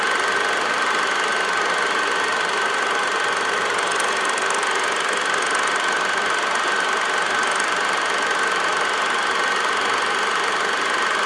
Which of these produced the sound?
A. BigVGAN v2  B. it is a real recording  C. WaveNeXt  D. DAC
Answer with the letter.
B